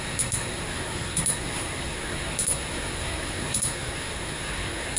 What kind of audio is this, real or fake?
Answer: fake